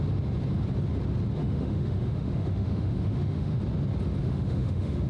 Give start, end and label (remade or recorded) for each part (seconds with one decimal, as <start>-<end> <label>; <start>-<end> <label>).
0.0-1.4 recorded; 1.4-3.6 remade; 3.6-4.2 recorded; 4.2-5.1 remade

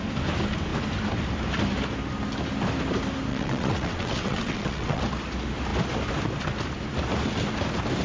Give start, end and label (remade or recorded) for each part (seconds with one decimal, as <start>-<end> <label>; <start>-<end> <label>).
0.0-3.3 recorded; 3.3-5.0 remade; 5.0-8.0 recorded

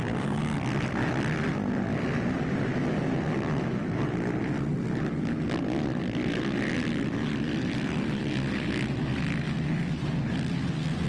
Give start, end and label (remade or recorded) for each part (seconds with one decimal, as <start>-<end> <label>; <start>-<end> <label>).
0.0-11.1 recorded

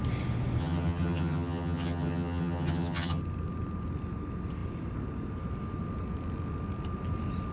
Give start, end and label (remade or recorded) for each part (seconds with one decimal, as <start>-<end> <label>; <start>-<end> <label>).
0.0-0.6 recorded; 0.6-3.2 remade; 3.2-7.5 recorded

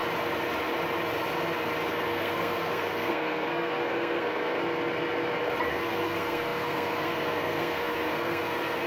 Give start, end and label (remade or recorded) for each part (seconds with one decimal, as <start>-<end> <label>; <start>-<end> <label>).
0.0-1.9 recorded; 1.9-4.6 remade; 4.6-5.7 recorded; 5.7-8.9 remade

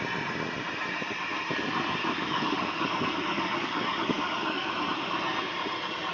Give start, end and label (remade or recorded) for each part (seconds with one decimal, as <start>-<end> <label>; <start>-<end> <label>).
0.0-2.0 recorded; 2.0-4.7 remade; 4.7-6.1 recorded

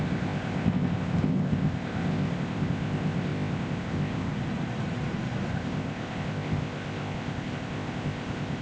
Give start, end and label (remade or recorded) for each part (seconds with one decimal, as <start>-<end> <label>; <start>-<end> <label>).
0.0-4.3 remade; 4.3-5.5 recorded; 5.5-8.6 remade

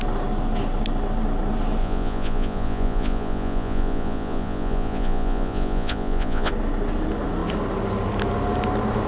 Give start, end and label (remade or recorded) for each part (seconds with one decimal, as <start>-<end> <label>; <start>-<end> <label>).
0.0-1.8 recorded; 1.8-6.5 remade; 6.5-9.1 recorded